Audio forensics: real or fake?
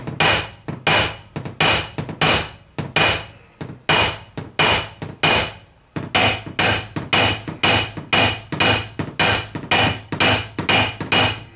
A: real